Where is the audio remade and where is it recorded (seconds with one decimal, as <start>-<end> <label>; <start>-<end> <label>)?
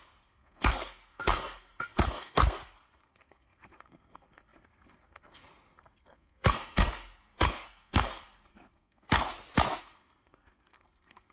0.0-9.3 remade; 9.3-9.8 recorded; 9.8-11.3 remade